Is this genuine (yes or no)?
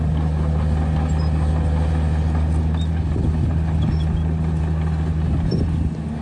yes